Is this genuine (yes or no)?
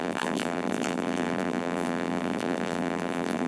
no